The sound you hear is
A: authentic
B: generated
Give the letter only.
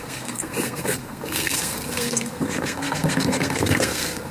B